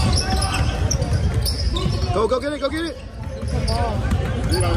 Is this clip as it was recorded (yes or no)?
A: yes